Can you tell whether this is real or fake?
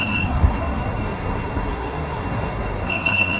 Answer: fake